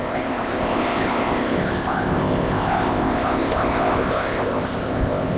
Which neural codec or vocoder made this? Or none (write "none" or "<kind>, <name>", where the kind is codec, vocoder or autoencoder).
codec, ZipCodec